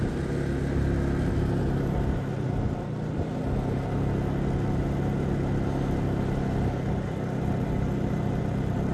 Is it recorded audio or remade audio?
recorded